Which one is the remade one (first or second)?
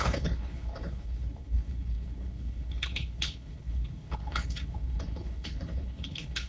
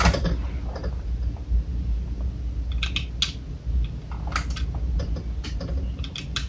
first